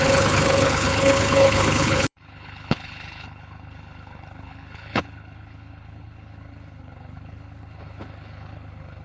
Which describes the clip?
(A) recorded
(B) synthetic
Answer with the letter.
B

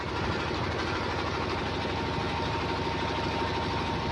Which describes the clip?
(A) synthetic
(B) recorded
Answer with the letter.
B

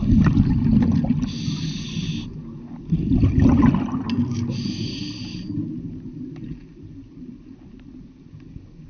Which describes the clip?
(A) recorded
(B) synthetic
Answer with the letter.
A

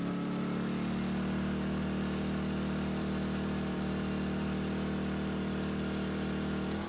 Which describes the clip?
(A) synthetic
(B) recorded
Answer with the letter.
A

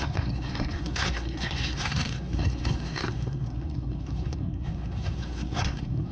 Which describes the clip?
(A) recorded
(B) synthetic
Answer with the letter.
B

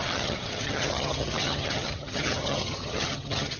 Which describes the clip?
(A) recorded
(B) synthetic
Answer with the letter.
B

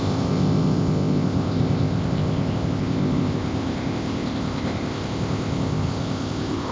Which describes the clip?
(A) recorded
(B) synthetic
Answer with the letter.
B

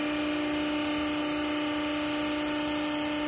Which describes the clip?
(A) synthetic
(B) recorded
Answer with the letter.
B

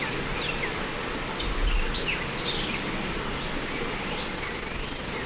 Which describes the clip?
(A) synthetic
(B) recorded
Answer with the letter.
B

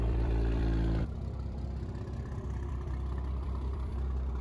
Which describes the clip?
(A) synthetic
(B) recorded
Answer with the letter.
A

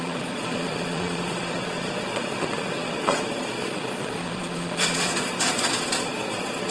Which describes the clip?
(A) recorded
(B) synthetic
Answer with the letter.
B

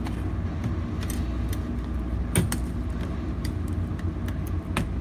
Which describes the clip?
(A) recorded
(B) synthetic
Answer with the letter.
A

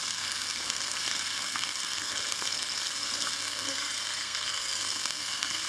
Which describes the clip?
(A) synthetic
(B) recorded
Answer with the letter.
A